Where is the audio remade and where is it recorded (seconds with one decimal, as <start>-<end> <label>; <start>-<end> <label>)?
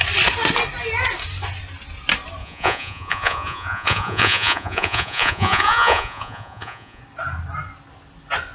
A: 0.0-2.4 recorded; 2.4-7.0 remade; 7.0-8.5 recorded